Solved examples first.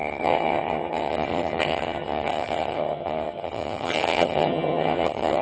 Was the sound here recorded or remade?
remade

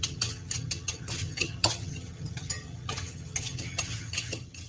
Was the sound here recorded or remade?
remade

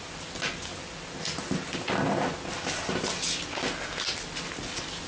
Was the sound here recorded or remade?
recorded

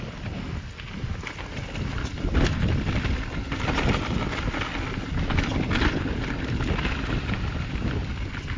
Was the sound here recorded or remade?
recorded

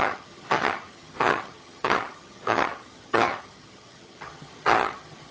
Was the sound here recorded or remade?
remade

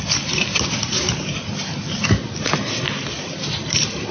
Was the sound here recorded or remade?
recorded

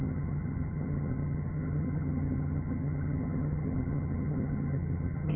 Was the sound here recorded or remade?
remade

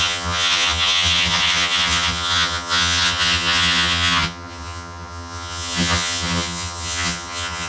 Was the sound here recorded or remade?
remade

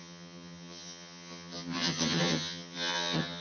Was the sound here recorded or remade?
remade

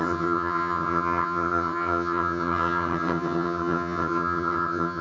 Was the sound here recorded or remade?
remade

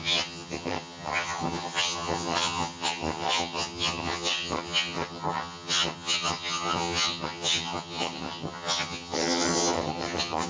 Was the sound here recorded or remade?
remade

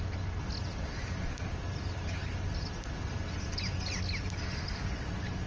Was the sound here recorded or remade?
recorded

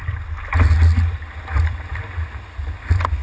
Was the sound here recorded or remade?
recorded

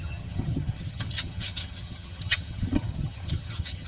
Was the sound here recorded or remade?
remade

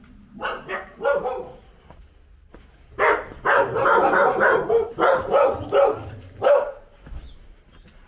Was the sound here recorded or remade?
recorded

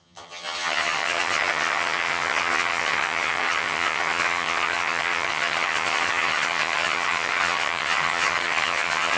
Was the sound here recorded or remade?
remade